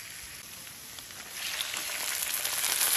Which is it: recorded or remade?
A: recorded